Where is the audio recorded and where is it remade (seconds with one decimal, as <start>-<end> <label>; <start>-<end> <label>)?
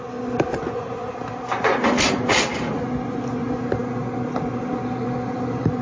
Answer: 0.0-0.5 recorded; 0.5-1.1 remade; 1.1-5.8 recorded